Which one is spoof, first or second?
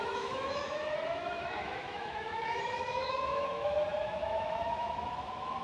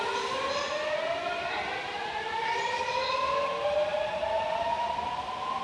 first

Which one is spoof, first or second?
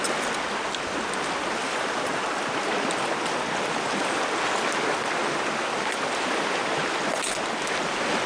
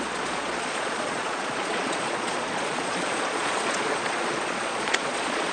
second